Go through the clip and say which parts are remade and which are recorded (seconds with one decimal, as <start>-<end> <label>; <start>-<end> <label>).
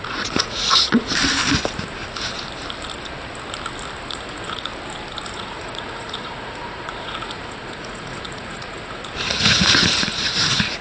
0.0-1.2 remade; 1.2-4.1 recorded; 4.1-4.7 remade; 4.7-5.3 recorded; 5.3-10.8 remade